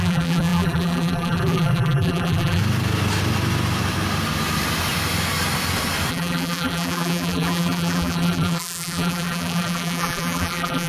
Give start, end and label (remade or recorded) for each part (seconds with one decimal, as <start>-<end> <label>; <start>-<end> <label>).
0.0-2.6 remade; 2.6-6.1 recorded; 6.1-10.9 remade

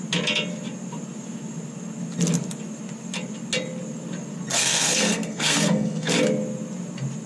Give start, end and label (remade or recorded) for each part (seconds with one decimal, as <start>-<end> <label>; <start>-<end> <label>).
0.0-4.5 recorded; 4.5-6.1 remade; 6.1-7.3 recorded

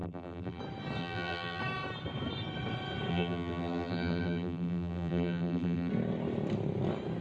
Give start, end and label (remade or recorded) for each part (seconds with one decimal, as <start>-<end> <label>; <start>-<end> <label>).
0.0-0.6 remade; 0.6-1.0 recorded; 1.0-1.6 remade; 1.6-3.1 recorded; 3.1-5.9 remade; 5.9-7.2 recorded

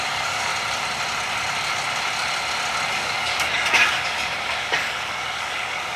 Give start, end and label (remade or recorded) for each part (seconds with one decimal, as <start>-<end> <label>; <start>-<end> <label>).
0.0-0.5 remade; 0.5-2.9 recorded; 2.9-6.0 remade

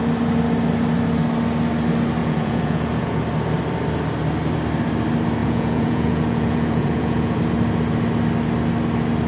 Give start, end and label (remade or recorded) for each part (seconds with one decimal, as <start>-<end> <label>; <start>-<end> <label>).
0.0-2.2 recorded; 2.2-3.2 remade; 3.2-5.4 recorded; 5.4-7.4 remade; 7.4-9.3 recorded

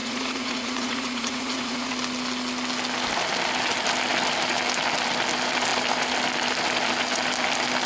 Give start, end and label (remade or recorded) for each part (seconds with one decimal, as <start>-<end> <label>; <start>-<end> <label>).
0.0-1.9 remade; 1.9-7.9 recorded